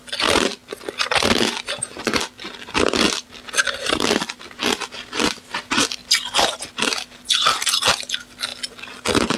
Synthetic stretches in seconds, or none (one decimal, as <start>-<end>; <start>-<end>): 0.6-4.7; 6.0-6.6